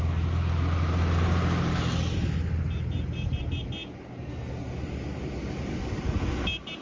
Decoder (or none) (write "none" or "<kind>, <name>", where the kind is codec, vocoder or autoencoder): none